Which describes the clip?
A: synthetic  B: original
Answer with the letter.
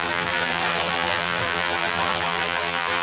A